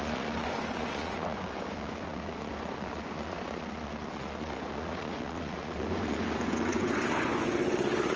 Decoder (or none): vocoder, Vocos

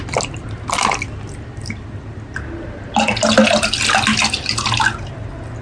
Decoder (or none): none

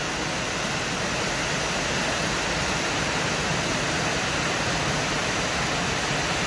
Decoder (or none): none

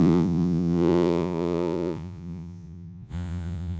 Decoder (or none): vocoder, Vocos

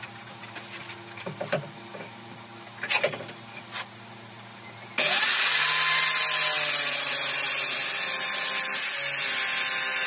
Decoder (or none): none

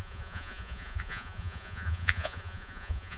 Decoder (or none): vocoder, Vocos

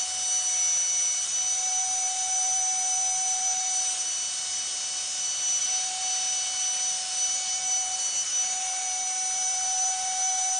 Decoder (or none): none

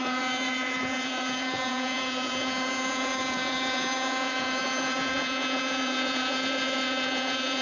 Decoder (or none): vocoder, Vocos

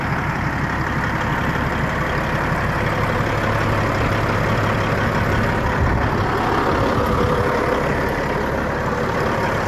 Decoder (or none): none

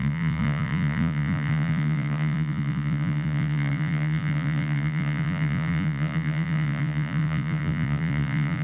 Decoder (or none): vocoder, Vocos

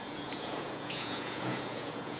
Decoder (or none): vocoder, Vocos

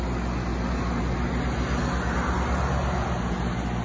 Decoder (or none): none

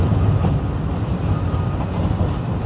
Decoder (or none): none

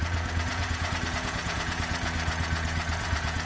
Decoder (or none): vocoder, Vocos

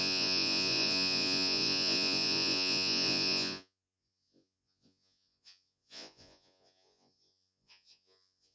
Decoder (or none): vocoder, Vocos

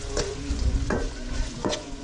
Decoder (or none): vocoder, Vocos